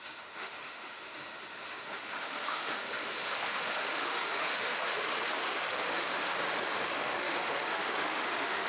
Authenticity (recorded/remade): remade